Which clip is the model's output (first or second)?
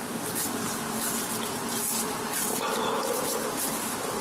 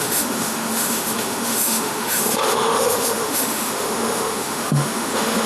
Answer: second